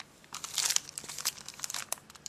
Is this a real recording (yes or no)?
yes